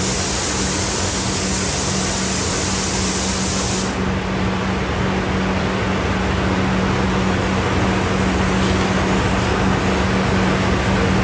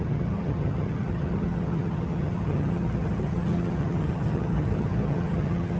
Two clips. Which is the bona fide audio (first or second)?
first